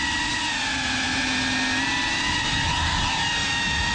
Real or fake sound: real